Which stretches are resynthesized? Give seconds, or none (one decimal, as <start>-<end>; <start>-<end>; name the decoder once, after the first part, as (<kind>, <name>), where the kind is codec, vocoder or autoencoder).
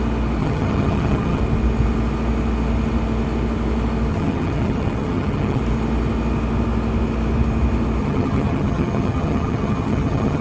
0.4-1.4 (vocoder, HiFi-GAN); 4.1-5.6; 8.0-10.4